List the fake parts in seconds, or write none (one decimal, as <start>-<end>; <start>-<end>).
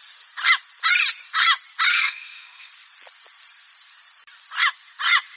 1.9-2.7